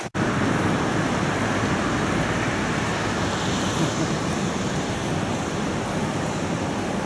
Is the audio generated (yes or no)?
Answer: no